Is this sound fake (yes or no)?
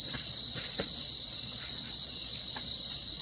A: yes